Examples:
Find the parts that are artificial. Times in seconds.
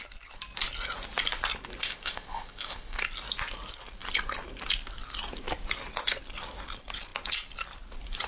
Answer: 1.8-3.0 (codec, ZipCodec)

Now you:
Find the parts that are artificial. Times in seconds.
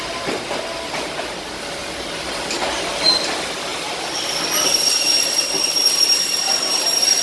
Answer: 3.7-4.2 (vocoder, BigVGAN v2)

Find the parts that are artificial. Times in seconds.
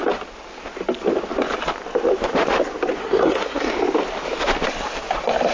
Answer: 3.0-3.7 (codec, SNAC)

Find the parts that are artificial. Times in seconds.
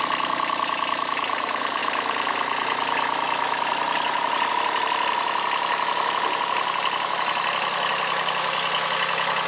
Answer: none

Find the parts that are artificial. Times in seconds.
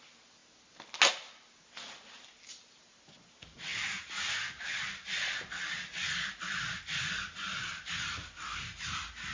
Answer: none